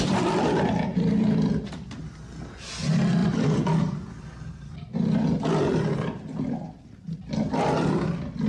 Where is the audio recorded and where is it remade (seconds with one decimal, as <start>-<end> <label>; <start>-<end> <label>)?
0.0-3.2 recorded; 3.2-4.4 remade; 4.4-8.5 recorded